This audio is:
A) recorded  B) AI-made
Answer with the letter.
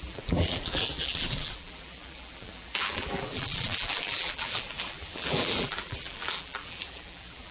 B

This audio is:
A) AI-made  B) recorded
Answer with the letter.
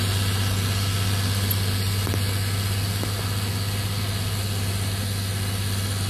B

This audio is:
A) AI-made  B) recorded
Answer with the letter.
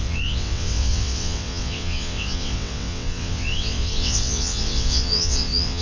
A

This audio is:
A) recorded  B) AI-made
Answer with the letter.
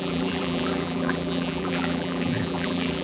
B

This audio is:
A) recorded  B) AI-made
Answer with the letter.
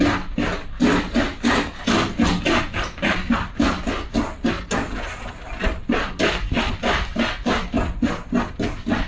A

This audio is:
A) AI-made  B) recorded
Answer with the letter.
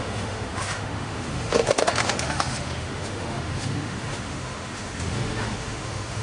A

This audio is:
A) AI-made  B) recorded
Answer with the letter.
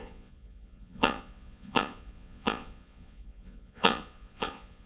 A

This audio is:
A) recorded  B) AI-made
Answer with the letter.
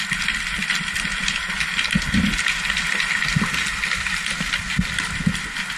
A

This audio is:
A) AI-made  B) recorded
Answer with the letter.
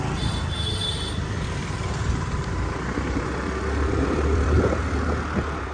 A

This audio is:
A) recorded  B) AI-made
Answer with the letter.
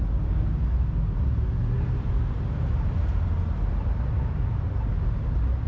A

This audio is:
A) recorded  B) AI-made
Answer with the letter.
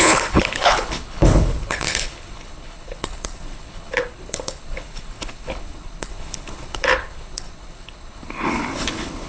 B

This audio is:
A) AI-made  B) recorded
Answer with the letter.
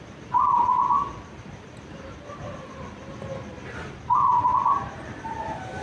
A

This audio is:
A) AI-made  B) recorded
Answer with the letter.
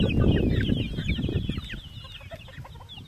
B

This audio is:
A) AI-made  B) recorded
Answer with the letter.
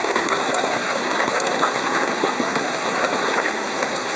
A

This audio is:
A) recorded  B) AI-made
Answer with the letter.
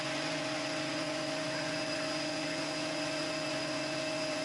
B